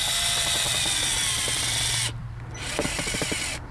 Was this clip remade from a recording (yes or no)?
yes